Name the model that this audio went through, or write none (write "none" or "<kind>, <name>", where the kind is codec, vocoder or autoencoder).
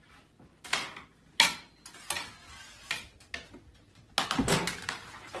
none